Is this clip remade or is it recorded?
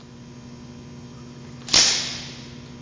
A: recorded